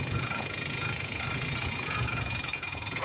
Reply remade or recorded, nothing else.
remade